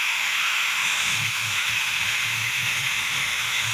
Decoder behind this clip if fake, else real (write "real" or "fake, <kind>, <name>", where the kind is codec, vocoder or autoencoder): fake, autoencoder, DAC-VAE